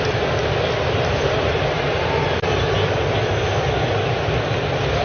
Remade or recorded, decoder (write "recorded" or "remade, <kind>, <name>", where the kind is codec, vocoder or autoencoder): recorded